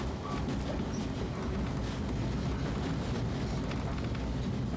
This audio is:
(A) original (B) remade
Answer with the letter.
A